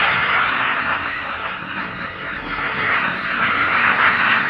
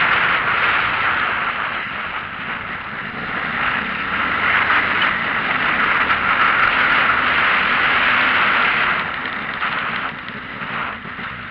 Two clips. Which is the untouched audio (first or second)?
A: second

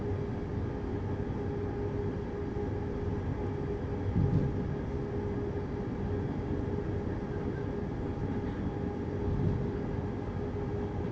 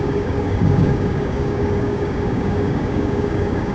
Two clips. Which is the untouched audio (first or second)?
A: first